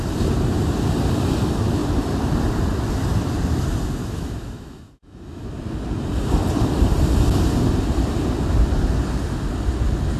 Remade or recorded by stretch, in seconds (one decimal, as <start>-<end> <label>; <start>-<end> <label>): 0.0-4.0 recorded; 4.0-5.5 remade; 5.5-10.2 recorded